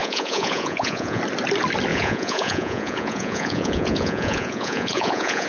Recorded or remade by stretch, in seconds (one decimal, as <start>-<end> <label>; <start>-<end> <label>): 0.0-1.2 remade; 1.2-1.9 recorded; 1.9-5.5 remade